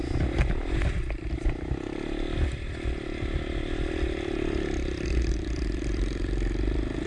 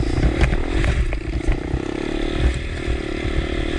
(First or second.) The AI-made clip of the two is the first